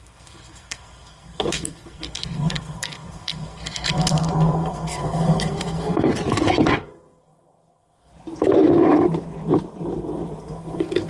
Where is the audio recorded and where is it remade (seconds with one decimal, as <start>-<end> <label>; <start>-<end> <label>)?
0.0-6.1 remade; 6.1-6.8 recorded; 6.8-8.1 remade; 8.1-10.4 recorded; 10.4-11.1 remade